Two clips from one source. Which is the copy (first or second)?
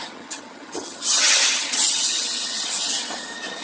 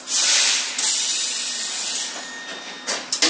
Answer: first